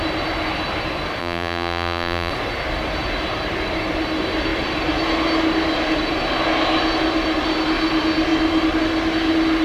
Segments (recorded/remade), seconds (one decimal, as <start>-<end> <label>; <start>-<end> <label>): 0.0-1.2 recorded; 1.2-2.3 remade; 2.3-9.6 recorded